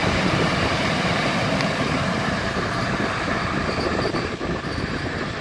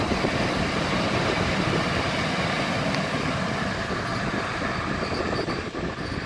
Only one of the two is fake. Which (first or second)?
first